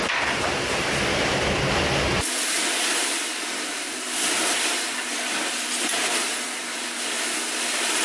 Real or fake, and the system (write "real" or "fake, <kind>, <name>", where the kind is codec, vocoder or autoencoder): real